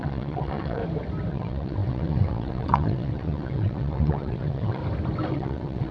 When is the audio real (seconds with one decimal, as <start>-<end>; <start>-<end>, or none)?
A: 0.8-1.3; 4.8-5.3

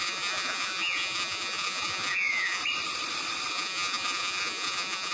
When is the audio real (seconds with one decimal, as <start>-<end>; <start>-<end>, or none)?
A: 2.6-3.5